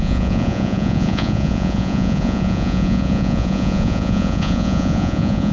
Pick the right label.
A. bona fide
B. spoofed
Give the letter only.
B